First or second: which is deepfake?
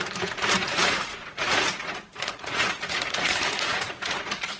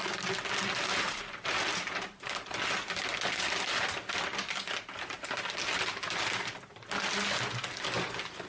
first